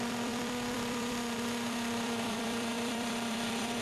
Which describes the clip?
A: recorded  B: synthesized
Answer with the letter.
B